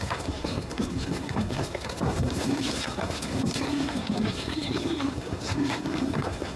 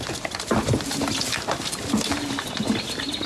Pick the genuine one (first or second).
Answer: second